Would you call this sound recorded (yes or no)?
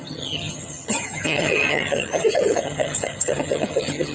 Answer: no